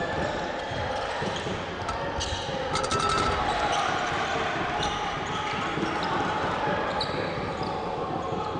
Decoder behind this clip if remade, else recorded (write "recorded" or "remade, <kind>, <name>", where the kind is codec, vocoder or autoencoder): recorded